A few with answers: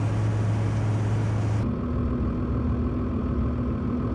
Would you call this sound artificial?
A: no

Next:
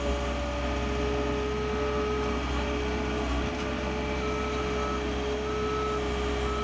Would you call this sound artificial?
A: no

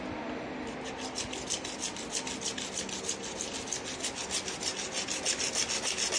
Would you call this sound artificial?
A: no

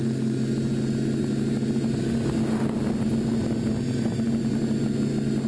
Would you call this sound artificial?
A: no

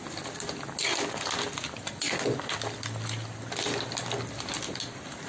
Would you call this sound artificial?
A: no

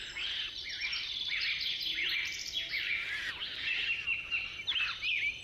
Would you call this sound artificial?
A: yes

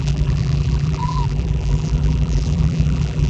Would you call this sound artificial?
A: yes